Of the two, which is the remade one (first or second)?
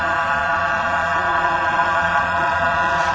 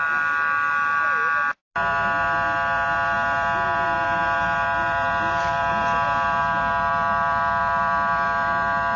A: first